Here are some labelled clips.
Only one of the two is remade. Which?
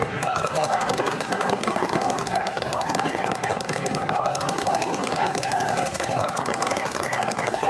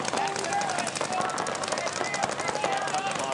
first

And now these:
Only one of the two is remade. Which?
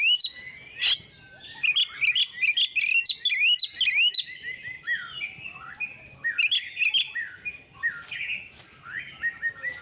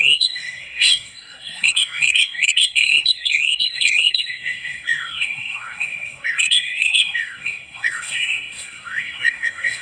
second